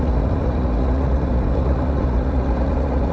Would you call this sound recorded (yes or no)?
no